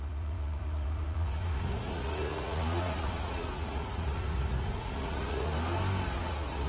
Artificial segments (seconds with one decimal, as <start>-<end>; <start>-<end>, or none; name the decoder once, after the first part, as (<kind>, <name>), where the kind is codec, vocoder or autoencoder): 0.0-5.5 (vocoder, Vocos); 6.3-6.7